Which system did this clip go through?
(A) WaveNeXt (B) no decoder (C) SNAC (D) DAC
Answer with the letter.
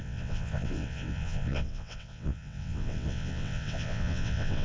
A